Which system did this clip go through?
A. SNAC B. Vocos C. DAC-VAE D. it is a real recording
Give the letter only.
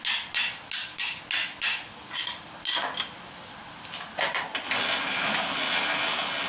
D